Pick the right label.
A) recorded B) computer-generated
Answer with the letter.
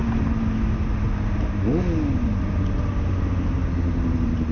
A